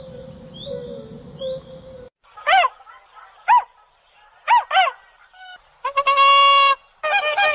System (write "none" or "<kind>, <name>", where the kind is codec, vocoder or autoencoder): none